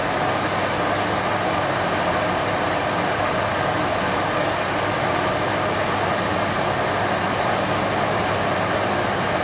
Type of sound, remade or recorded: recorded